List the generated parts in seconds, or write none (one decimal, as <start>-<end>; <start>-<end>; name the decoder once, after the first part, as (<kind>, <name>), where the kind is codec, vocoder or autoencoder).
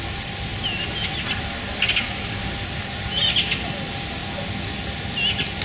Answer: none